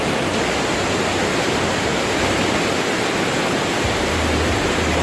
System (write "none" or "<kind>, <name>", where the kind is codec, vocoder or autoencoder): none